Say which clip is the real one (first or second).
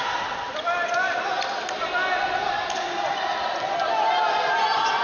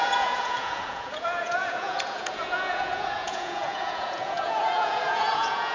first